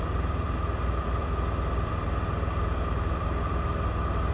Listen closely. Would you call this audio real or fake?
fake